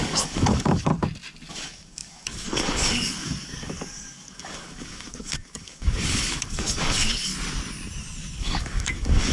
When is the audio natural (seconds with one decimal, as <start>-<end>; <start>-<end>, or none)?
0.9-1.5; 7.3-8.4